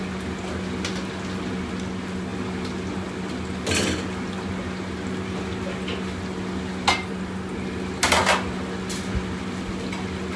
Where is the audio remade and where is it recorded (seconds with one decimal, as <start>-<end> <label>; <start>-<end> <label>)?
0.0-10.4 recorded